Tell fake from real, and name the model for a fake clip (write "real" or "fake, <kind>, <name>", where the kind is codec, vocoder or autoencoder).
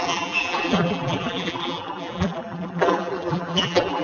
fake, vocoder, BigVGAN v2